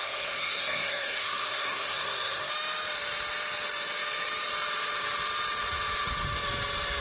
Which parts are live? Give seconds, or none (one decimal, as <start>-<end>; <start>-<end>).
2.5-7.0